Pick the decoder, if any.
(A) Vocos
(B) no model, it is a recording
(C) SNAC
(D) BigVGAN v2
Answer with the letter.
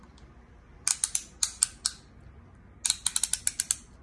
B